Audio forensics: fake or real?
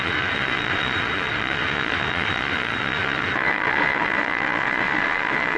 fake